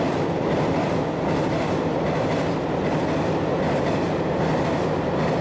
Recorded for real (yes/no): yes